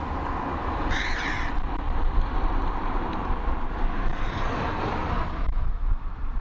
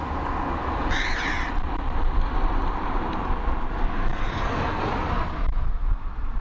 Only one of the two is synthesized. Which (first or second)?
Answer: first